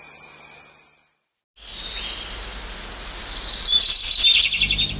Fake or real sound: real